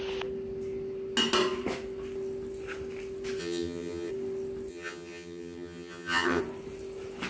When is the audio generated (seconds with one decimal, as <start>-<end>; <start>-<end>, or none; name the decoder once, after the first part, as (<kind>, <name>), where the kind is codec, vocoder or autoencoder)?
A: 3.4-4.1 (vocoder, HiFi-GAN); 4.7-6.4